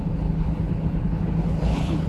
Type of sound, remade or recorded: remade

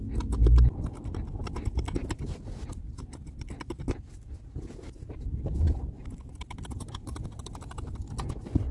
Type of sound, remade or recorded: recorded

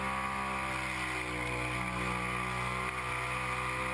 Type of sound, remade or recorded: recorded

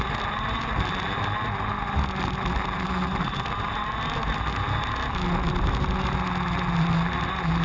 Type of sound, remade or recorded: recorded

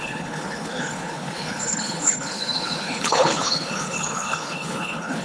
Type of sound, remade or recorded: remade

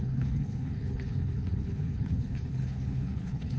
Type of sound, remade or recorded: remade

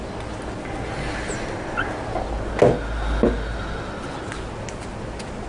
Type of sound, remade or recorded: recorded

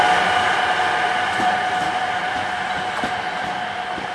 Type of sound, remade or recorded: recorded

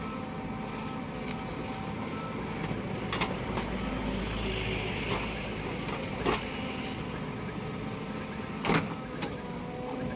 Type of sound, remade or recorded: recorded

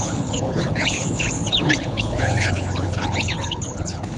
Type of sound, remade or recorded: remade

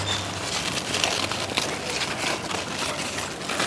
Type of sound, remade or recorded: recorded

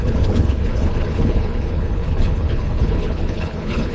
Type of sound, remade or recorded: remade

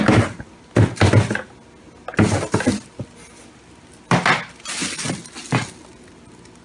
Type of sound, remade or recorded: recorded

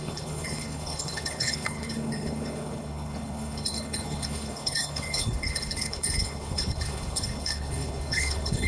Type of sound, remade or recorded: remade